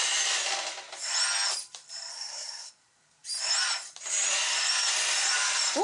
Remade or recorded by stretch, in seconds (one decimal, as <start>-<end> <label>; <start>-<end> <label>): 0.0-2.1 recorded; 2.1-2.7 remade; 2.7-5.8 recorded